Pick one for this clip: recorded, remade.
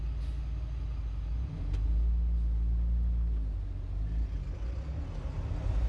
recorded